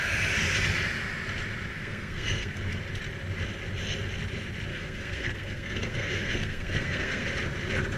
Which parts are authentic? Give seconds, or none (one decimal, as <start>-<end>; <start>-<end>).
0.0-1.7; 2.8-4.7; 7.2-8.0